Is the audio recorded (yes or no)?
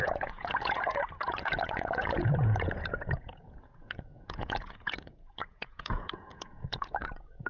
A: no